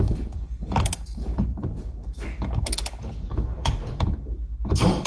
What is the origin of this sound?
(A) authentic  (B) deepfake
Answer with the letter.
B